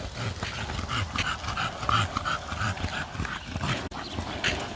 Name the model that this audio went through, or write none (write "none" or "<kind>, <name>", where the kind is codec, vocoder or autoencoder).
none